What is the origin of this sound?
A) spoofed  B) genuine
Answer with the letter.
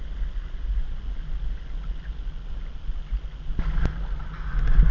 B